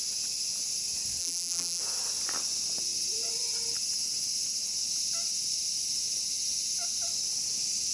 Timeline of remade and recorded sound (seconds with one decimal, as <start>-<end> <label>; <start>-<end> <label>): 0.0-1.2 recorded; 1.2-1.8 remade; 1.8-7.9 recorded